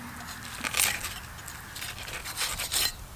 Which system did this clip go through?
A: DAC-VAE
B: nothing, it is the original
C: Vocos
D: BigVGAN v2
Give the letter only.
B